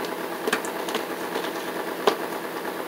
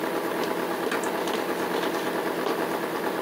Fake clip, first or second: second